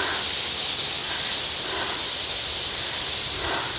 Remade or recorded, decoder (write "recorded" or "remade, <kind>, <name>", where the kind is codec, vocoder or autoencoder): recorded